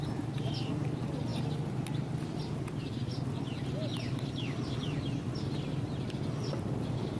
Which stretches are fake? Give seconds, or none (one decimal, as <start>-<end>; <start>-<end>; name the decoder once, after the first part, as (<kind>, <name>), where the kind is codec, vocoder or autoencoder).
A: none